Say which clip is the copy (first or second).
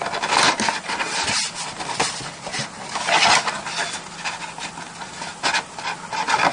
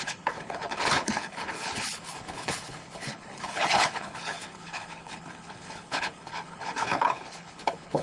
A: second